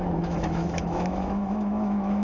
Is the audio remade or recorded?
remade